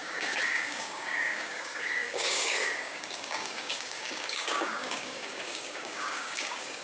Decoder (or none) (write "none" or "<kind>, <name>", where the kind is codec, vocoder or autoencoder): codec, DAC